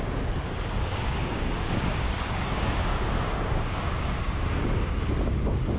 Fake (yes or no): yes